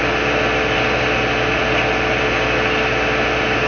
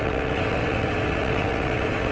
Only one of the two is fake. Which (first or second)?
second